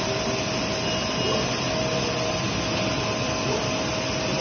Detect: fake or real real